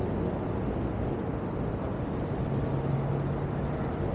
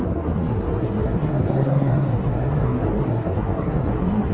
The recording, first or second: first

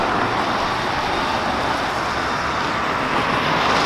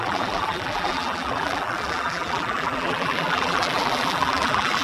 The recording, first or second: first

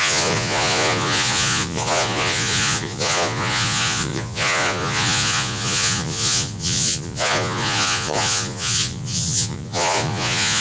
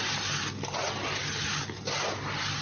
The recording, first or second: second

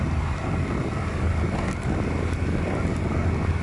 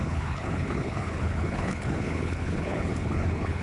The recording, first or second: first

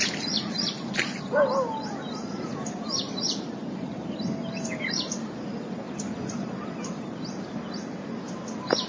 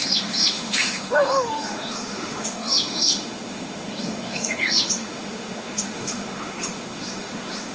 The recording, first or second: first